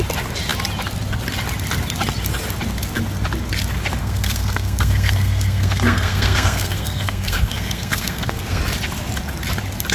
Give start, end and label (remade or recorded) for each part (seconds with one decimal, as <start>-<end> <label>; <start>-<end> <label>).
0.0-4.0 recorded; 4.0-8.6 remade; 8.6-9.9 recorded